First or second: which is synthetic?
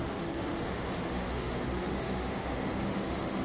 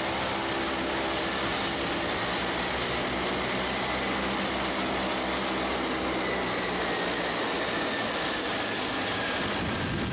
first